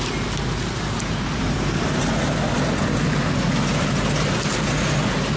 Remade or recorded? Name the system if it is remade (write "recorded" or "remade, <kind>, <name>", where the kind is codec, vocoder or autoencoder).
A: recorded